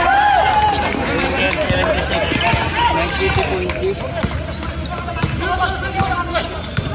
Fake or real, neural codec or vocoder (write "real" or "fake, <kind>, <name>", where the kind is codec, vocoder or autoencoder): real